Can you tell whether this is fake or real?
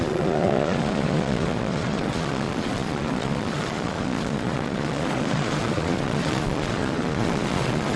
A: fake